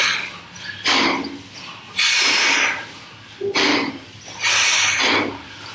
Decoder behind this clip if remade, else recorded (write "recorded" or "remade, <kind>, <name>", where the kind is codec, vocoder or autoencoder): recorded